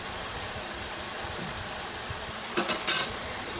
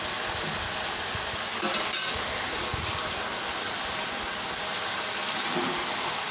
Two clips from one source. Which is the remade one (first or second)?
first